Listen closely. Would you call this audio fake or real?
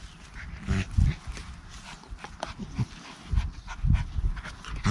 real